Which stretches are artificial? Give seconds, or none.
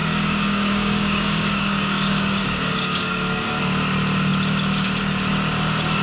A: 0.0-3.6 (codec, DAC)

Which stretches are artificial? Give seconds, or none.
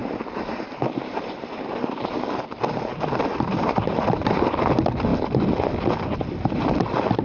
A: 0.0-4.3 (vocoder, BigVGAN v2)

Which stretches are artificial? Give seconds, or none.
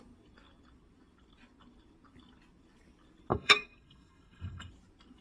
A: 3.3-4.7 (codec, SNAC)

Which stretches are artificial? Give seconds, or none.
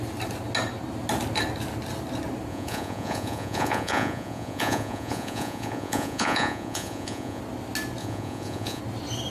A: 2.5-7.4 (vocoder, Vocos); 8.0-8.8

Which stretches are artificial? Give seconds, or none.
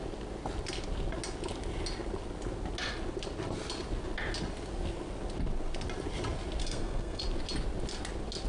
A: 6.6-7.2 (codec, SNAC)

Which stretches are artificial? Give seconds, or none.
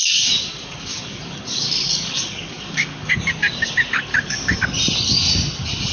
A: 0.0-3.1 (codec, DAC); 4.1-4.6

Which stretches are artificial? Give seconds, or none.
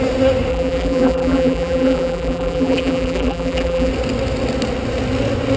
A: 0.5-3.9 (vocoder, BigVGAN v2)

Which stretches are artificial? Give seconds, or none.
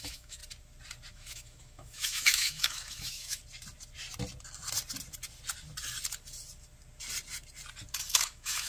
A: 0.0-0.4 (autoencoder, DAC-VAE); 1.1-3.4; 8.1-8.7